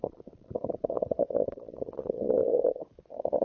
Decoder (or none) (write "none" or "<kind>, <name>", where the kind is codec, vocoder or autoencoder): vocoder, Vocos